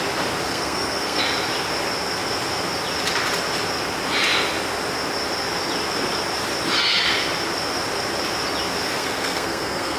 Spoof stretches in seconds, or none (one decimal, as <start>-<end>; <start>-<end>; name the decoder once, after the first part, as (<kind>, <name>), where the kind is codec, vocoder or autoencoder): 0.5-1.2 (codec, SNAC); 9.0-10.0